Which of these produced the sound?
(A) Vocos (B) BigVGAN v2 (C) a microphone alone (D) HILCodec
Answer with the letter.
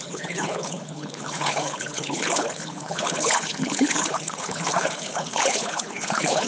D